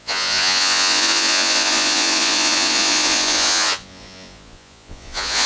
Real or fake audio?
fake